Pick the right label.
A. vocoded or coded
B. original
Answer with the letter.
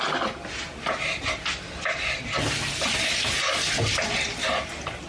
B